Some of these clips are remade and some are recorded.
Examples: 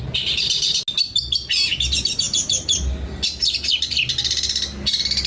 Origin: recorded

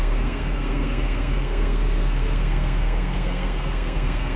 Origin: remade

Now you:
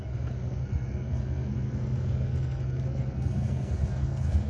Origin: remade